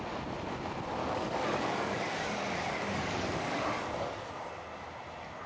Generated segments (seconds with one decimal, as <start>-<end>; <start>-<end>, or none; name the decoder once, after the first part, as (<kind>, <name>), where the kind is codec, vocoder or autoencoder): 1.0-4.3 (codec, DAC)